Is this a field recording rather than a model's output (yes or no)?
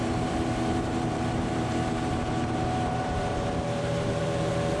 no